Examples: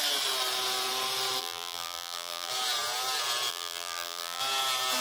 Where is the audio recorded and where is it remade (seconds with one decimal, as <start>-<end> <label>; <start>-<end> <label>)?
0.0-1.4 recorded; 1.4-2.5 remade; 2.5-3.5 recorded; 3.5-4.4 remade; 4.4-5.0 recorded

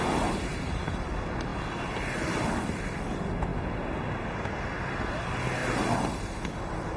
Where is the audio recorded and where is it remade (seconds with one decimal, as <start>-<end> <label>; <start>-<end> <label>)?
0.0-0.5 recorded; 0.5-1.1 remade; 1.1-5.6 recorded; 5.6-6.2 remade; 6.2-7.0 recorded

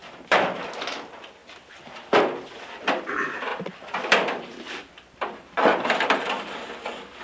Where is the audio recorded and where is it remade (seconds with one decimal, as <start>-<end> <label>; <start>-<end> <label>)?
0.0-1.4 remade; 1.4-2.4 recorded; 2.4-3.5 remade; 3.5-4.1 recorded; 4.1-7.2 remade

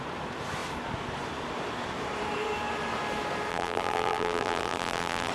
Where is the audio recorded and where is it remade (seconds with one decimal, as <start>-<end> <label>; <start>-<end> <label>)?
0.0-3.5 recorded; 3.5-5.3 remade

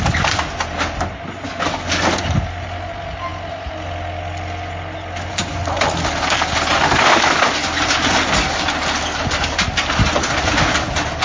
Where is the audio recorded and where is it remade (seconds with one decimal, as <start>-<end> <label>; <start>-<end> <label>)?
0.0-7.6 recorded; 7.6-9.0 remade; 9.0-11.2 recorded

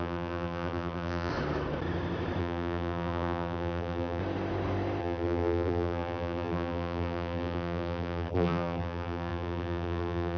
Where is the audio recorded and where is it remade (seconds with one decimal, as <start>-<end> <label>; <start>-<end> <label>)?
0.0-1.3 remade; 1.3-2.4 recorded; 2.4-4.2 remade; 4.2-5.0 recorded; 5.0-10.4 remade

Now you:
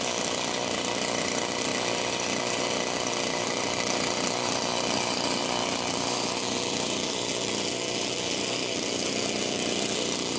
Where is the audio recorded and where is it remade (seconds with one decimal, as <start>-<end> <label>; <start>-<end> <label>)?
0.0-10.4 remade

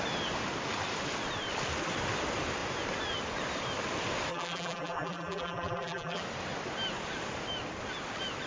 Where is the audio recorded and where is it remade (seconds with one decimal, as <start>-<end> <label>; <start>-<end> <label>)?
0.0-4.3 recorded; 4.3-6.2 remade; 6.2-8.5 recorded